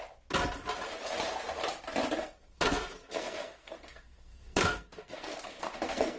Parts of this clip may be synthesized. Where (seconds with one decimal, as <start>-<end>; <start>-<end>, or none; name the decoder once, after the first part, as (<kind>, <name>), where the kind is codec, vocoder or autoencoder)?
2.2-6.2 (codec, SNAC)